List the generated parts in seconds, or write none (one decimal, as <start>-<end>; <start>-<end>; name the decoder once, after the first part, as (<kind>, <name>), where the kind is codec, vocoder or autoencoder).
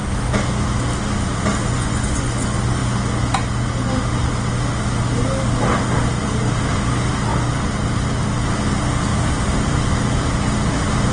1.6-2.4 (vocoder, Vocos)